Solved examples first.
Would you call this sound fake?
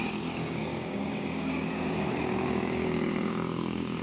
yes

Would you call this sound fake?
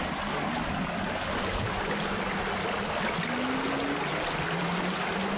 no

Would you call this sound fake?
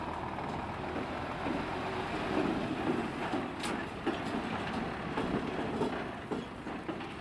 no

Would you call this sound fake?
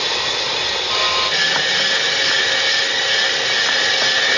no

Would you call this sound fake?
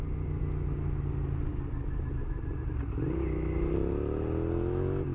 no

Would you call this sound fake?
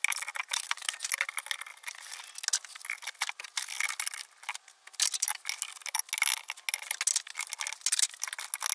no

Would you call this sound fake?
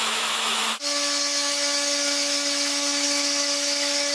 yes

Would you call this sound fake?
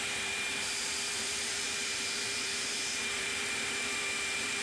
yes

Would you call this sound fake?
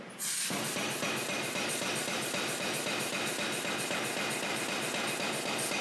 yes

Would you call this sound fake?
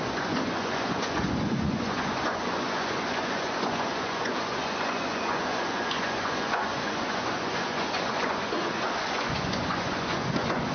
yes